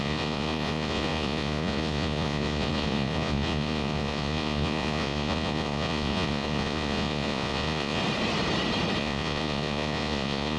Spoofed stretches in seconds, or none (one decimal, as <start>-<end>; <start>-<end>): 0.0-8.0; 9.0-10.6